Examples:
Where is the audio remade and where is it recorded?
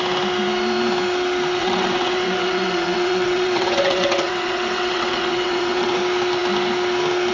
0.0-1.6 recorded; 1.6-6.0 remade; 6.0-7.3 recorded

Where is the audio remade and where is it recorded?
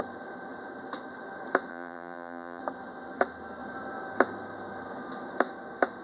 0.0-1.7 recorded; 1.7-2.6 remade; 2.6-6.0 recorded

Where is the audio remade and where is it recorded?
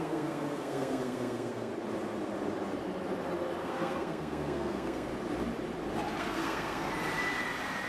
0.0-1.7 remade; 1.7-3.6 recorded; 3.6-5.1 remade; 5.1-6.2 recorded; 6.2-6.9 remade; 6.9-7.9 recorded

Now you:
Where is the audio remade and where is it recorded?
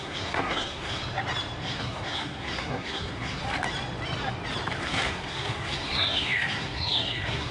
0.0-1.0 remade; 1.0-1.6 recorded; 1.6-3.4 remade; 3.4-4.8 recorded; 4.8-7.5 remade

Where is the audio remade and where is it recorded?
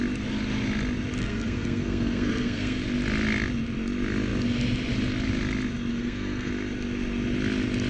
0.0-1.2 recorded; 1.2-2.8 remade; 2.8-5.9 recorded; 5.9-6.5 remade; 6.5-7.9 recorded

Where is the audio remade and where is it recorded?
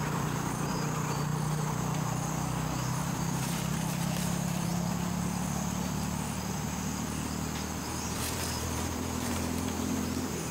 0.0-1.3 remade; 1.3-2.9 recorded; 2.9-4.7 remade; 4.7-7.8 recorded; 7.8-10.5 remade